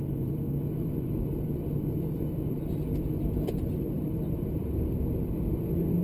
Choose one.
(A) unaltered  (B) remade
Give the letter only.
B